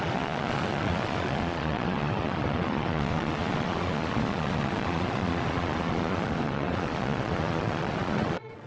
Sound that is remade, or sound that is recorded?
remade